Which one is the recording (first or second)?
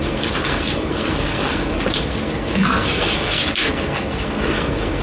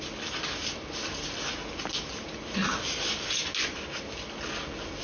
second